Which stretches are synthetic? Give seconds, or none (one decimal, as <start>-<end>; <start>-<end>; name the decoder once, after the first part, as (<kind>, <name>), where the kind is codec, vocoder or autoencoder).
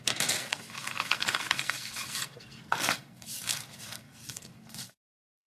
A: 0.0-5.5 (codec, SNAC)